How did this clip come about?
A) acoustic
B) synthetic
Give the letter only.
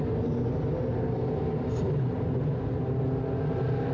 A